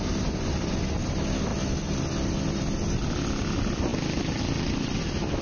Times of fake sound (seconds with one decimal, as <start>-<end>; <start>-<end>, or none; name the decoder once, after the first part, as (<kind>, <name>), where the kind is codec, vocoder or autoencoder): none